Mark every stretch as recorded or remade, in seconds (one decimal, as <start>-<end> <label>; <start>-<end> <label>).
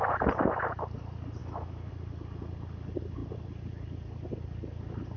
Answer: 0.0-1.4 recorded; 1.4-1.9 remade; 1.9-5.2 recorded